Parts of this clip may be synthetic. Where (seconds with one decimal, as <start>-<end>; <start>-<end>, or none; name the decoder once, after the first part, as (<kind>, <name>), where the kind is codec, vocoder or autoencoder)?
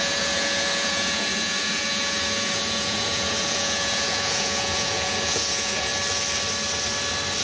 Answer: 0.0-5.9 (vocoder, Vocos)